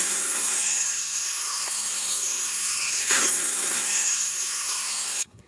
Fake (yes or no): yes